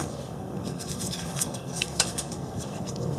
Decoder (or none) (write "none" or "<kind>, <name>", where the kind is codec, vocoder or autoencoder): codec, SNAC